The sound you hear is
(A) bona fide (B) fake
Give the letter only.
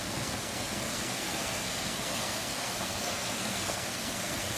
B